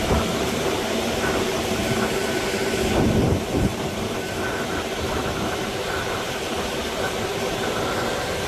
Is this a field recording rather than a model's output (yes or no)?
no